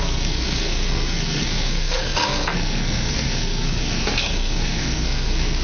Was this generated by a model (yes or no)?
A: yes